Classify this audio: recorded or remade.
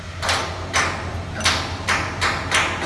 recorded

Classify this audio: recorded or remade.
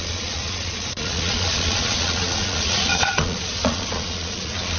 remade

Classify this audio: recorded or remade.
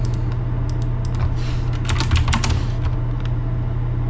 recorded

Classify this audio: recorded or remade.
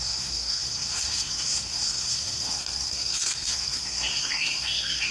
remade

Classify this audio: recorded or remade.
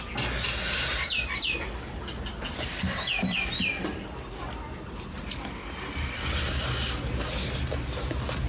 recorded